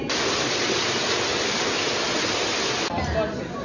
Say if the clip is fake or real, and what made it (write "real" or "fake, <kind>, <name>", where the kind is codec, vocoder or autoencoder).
real